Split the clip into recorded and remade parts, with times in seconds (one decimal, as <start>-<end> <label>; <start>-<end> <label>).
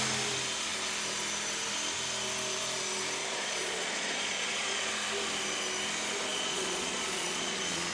0.0-3.2 recorded; 3.2-4.9 remade; 4.9-6.3 recorded; 6.3-7.9 remade